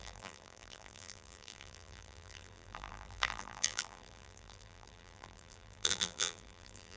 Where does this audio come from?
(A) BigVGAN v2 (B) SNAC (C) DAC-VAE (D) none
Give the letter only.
A